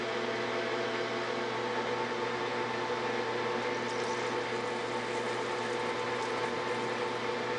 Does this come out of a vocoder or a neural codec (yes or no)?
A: no